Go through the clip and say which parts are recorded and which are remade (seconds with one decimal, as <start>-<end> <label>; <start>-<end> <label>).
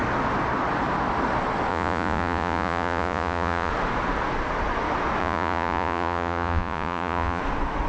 0.0-1.7 recorded; 1.7-3.7 remade; 3.7-5.2 recorded; 5.2-7.4 remade; 7.4-7.9 recorded